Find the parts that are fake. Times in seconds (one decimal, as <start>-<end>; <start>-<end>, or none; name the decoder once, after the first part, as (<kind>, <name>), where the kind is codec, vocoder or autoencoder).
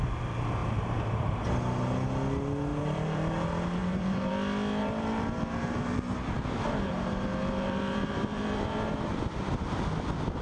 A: 0.6-1.3 (vocoder, BigVGAN v2); 2.7-3.3; 3.8-4.3; 4.8-8.9